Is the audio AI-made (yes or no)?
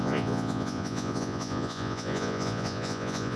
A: yes